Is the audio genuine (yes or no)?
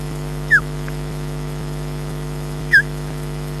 no